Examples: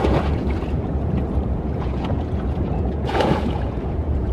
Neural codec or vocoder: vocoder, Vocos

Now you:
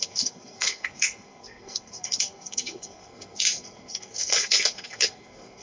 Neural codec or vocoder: codec, SNAC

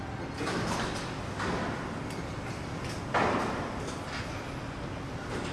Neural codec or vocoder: none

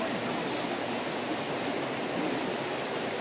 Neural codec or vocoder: none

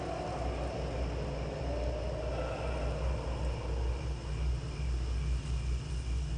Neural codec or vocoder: none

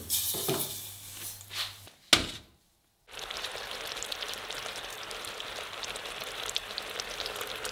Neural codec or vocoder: none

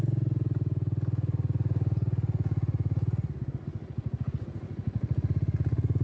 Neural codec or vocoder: none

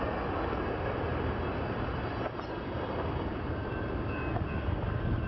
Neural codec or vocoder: none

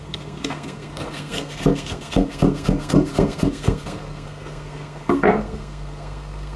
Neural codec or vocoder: codec, SNAC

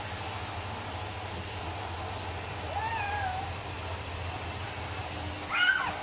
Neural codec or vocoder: none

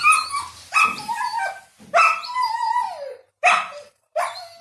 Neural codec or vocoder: none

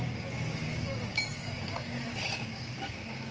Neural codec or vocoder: codec, DAC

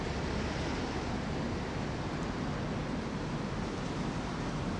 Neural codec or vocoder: vocoder, BigVGAN v2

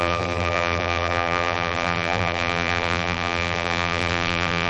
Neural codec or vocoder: vocoder, BigVGAN v2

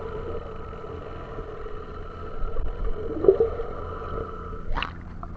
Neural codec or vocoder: none